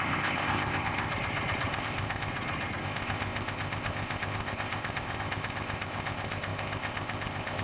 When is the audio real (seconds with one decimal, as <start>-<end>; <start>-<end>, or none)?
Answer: 1.1-1.7; 2.3-2.8